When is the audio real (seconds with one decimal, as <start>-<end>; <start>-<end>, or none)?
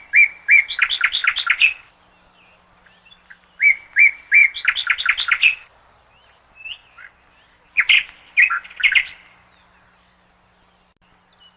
0.0-11.6